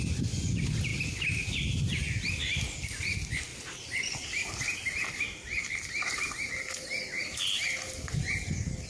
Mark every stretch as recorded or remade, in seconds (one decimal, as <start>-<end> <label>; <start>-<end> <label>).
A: 0.0-3.5 recorded; 3.5-6.3 remade; 6.3-8.9 recorded